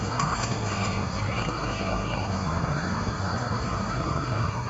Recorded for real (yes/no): no